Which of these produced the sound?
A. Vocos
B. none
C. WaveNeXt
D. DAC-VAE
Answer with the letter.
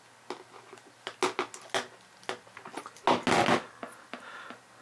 B